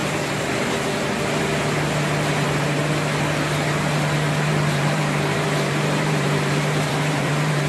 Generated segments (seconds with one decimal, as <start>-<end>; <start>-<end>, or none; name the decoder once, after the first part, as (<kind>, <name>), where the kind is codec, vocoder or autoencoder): 2.3-2.8 (vocoder, BigVGAN v2); 4.5-7.7